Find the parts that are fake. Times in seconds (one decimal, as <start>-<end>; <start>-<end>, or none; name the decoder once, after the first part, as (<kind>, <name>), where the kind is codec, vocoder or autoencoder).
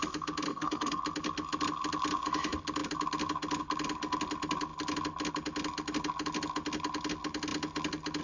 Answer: 0.5-1.0 (codec, SNAC)